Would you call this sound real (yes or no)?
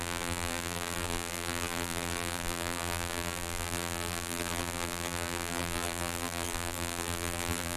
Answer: no